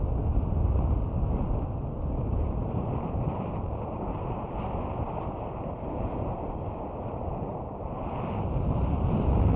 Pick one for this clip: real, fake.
real